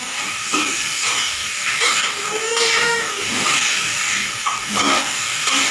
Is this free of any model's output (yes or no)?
no